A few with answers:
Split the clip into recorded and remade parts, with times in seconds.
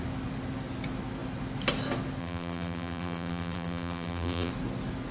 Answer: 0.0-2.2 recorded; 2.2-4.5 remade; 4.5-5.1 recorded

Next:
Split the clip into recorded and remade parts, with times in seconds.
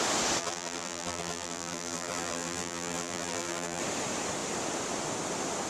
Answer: 0.0-0.4 recorded; 0.4-3.8 remade; 3.8-5.7 recorded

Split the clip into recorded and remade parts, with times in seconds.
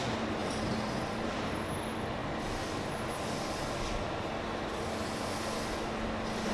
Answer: 0.0-0.4 recorded; 0.4-1.5 remade; 1.5-6.5 recorded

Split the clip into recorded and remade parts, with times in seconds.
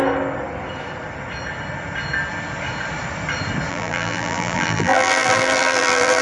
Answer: 0.0-3.7 recorded; 3.7-6.2 remade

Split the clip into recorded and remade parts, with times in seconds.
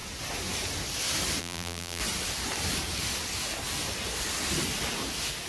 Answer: 0.0-1.4 recorded; 1.4-2.0 remade; 2.0-5.5 recorded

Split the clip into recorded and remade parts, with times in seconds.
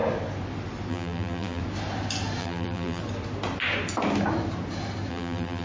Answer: 0.0-0.9 recorded; 0.9-1.6 remade; 1.6-2.4 recorded; 2.4-3.0 remade; 3.0-5.1 recorded; 5.1-5.6 remade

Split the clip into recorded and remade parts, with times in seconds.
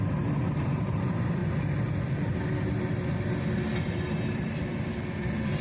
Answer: 0.0-1.4 remade; 1.4-3.8 recorded; 3.8-5.6 remade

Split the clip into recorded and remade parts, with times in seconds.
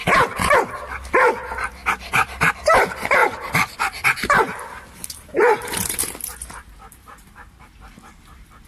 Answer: 0.0-0.5 remade; 0.5-1.8 recorded; 1.8-2.6 remade; 2.6-3.2 recorded; 3.2-7.7 remade; 7.7-8.7 recorded